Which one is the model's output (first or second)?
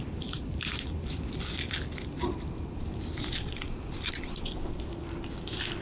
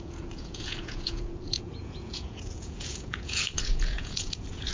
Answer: second